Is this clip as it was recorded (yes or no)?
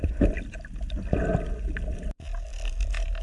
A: yes